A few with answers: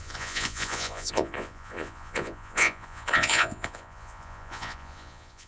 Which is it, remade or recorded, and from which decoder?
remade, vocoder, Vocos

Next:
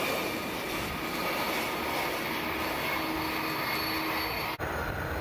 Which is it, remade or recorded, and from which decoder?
recorded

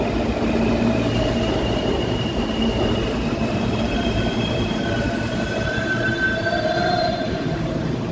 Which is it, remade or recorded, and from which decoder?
remade, vocoder, BigVGAN v2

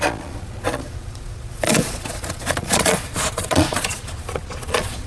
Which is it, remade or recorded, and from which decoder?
remade, vocoder, Vocos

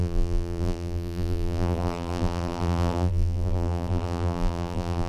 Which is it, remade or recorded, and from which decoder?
remade, vocoder, BigVGAN v2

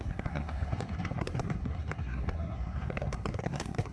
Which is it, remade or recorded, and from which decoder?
remade, codec, SNAC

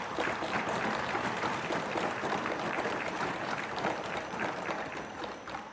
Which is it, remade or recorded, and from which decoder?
remade, vocoder, BigVGAN v2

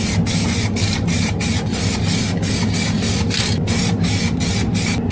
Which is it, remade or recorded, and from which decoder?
recorded